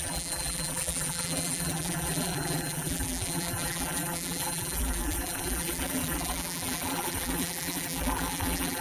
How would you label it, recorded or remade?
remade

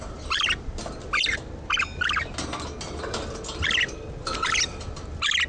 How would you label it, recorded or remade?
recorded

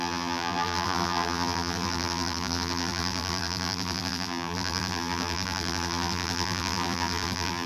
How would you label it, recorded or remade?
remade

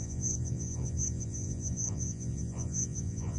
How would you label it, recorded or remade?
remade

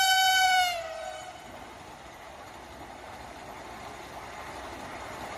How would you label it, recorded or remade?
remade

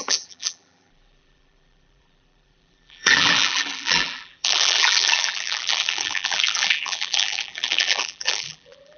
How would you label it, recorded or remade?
remade